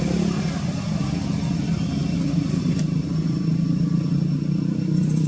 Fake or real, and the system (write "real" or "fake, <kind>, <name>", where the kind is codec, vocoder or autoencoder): real